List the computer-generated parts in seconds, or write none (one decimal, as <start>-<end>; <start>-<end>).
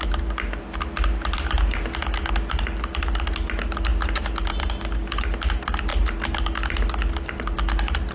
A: none